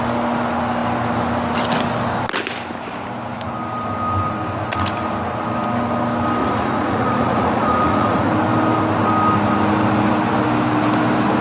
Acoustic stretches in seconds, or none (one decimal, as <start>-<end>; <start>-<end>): 0.0-6.4; 8.3-11.4

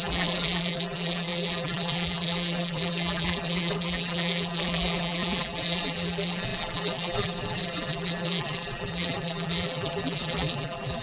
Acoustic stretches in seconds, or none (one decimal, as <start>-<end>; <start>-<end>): none

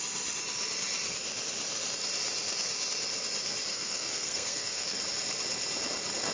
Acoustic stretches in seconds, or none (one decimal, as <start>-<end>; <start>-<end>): 0.0-3.7; 5.0-6.3

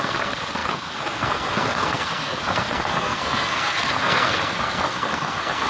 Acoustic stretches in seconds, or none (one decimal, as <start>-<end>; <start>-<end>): none

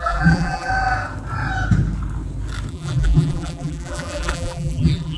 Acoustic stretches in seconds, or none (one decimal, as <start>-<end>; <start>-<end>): 0.7-2.7

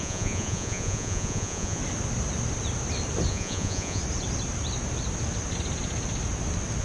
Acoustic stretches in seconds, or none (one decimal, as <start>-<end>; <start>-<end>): 1.8-3.3; 4.0-6.8

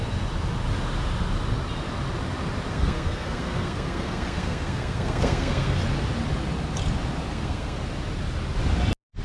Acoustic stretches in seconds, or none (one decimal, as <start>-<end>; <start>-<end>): 0.0-2.7; 5.8-7.3; 7.8-9.2